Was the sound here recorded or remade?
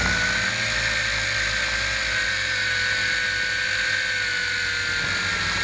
recorded